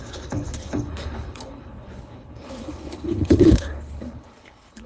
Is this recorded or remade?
remade